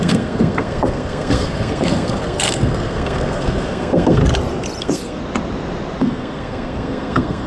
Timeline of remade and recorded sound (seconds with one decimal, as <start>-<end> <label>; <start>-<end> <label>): 0.0-4.2 remade; 4.2-4.8 recorded; 4.8-5.2 remade; 5.2-6.0 recorded; 6.0-7.5 remade